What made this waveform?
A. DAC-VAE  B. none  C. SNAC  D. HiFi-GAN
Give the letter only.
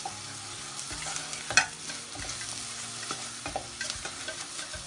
B